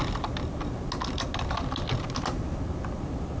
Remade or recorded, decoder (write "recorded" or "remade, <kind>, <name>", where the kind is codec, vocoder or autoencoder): recorded